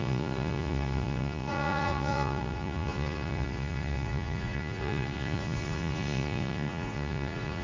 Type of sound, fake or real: fake